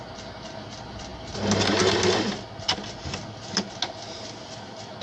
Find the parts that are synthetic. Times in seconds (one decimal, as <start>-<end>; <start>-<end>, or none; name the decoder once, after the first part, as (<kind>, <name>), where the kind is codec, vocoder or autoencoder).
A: none